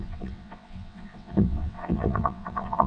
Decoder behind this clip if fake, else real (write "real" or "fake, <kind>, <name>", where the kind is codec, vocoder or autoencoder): fake, vocoder, WaveNeXt